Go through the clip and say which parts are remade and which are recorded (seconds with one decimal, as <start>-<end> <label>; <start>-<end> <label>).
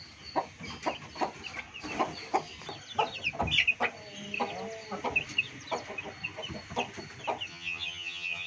0.0-7.5 recorded; 7.5-8.5 remade